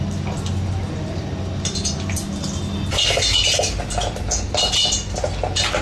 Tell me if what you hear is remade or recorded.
recorded